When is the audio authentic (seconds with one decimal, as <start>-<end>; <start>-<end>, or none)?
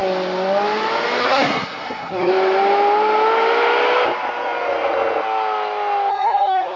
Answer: 0.0-1.2; 2.3-6.1